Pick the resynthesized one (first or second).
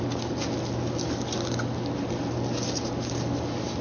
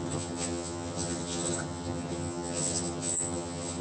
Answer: second